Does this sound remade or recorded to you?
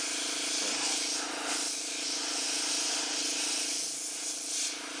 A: recorded